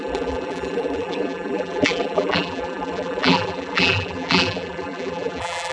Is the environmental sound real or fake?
fake